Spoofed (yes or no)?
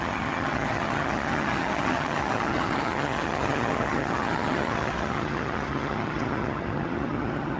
yes